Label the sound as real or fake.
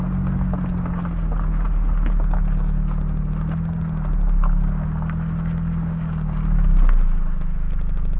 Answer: real